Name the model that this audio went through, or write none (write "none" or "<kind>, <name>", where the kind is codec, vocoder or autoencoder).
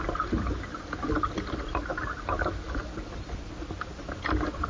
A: none